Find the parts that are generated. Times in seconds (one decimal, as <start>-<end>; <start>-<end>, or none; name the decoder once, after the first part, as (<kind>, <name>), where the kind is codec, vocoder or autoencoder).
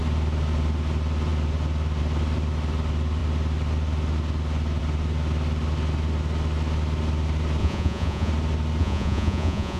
7.6-8.3 (vocoder, Vocos); 8.8-9.8